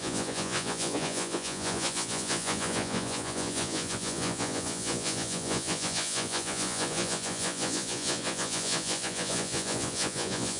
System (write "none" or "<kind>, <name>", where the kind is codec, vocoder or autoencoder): vocoder, Vocos